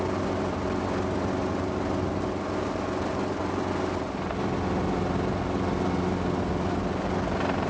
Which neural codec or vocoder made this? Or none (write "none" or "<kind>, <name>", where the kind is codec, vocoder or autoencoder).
none